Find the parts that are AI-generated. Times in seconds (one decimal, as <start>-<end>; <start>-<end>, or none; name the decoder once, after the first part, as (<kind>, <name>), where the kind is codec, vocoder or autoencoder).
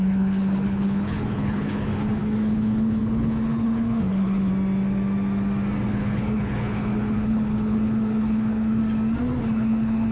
0.0-4.5 (codec, HILCodec); 5.9-8.8; 9.4-10.1